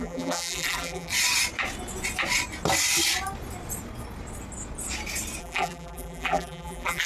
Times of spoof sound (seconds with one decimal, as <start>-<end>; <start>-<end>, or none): 0.0-1.1; 5.4-7.1